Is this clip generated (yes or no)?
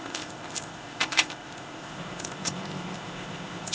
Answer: yes